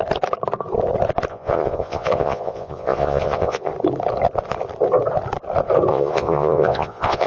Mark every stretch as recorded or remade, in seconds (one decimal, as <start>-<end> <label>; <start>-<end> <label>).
0.0-1.3 recorded; 1.3-3.7 remade; 3.7-5.9 recorded; 5.9-7.3 remade